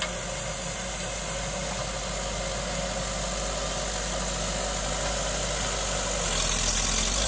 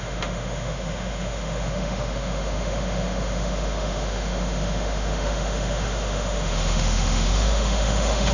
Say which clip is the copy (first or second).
second